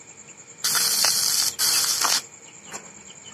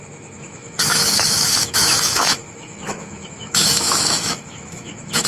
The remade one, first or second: second